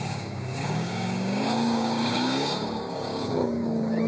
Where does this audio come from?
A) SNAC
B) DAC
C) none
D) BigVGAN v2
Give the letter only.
B